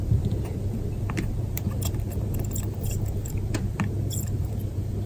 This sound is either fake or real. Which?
fake